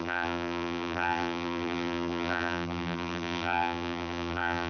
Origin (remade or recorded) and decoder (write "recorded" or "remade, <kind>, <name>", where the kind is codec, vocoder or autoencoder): remade, vocoder, BigVGAN v2